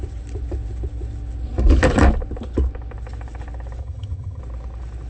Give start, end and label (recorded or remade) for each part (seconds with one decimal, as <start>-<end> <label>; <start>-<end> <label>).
0.0-3.8 recorded; 3.8-4.4 remade; 4.4-5.1 recorded